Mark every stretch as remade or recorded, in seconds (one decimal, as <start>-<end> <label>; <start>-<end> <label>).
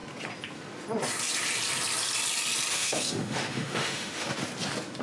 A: 0.0-2.7 recorded; 2.7-4.3 remade; 4.3-5.0 recorded